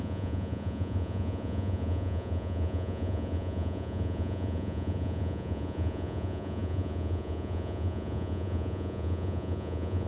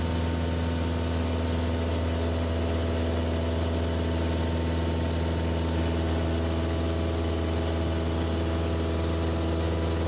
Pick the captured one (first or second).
second